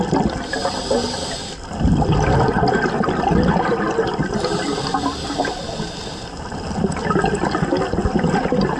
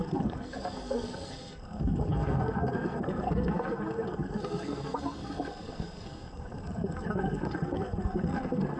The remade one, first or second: second